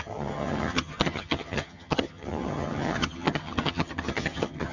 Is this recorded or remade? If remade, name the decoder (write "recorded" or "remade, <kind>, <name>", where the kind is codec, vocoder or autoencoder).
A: remade, vocoder, HiFi-GAN